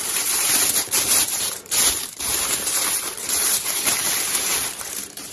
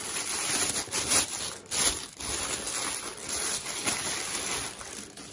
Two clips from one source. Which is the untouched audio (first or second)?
second